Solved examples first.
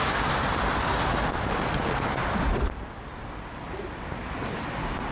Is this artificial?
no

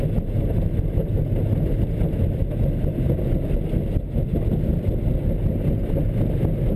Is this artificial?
no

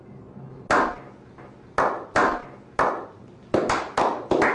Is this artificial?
no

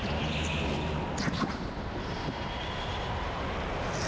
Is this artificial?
no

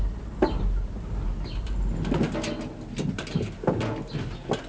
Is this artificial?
no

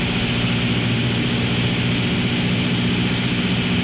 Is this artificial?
no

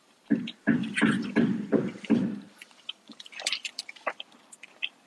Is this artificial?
yes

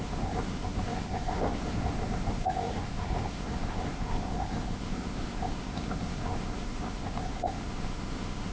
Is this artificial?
yes